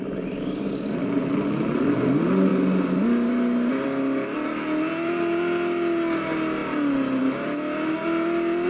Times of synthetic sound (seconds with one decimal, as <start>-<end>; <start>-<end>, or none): none